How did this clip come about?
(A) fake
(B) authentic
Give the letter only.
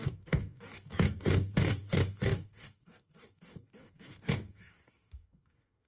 A